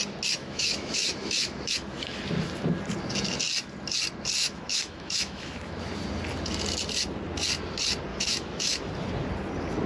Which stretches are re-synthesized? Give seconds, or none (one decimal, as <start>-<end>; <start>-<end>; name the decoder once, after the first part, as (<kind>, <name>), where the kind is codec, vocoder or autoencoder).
0.4-2.2 (autoencoder, DAC-VAE); 4.4-5.8; 8.1-8.9